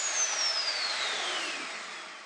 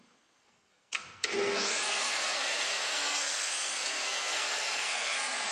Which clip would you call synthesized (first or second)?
second